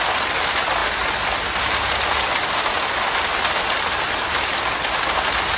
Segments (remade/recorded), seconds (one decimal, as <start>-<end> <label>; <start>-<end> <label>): 0.0-5.6 recorded